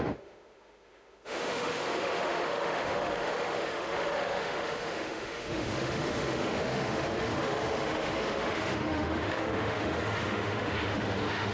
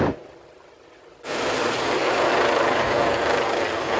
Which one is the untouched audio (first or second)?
second